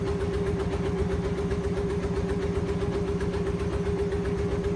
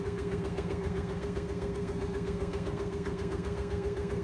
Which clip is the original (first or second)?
first